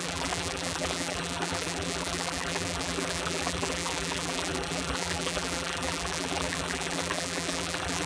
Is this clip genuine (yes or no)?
no